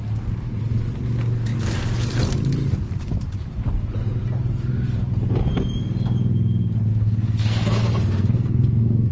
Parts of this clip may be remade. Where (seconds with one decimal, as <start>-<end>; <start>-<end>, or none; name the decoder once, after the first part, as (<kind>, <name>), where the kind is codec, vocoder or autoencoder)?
6.9-9.1 (codec, SNAC)